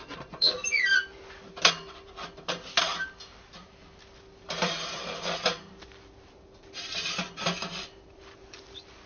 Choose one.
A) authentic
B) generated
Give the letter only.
B